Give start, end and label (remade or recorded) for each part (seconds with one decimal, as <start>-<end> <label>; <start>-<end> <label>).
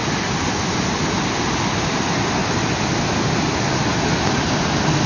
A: 0.0-5.1 recorded